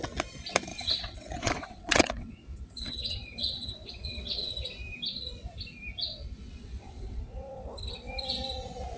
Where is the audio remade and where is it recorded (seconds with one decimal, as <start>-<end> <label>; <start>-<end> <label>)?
0.0-0.7 recorded; 0.7-4.5 remade; 4.5-6.1 recorded; 6.1-7.2 remade; 7.2-9.0 recorded